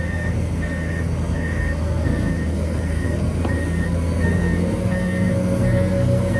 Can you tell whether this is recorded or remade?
remade